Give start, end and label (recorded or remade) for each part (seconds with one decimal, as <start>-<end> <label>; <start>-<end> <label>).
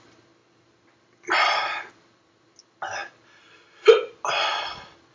0.0-5.1 recorded